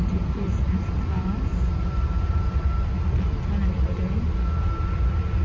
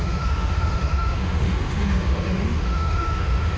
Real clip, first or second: first